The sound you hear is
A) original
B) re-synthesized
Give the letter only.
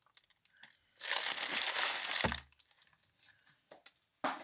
A